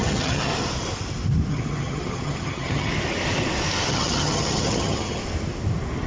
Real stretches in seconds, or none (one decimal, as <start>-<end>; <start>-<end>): 0.5-1.5; 2.9-3.9; 5.2-6.1